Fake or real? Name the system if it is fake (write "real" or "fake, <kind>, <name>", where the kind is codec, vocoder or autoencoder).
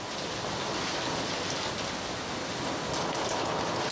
real